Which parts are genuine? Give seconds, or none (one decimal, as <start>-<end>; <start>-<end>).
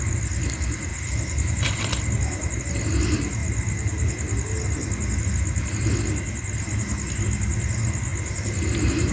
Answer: 0.0-0.9; 2.6-9.1